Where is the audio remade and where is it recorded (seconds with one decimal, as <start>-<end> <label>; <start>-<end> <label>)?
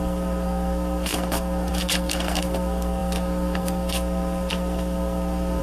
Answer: 0.0-5.6 remade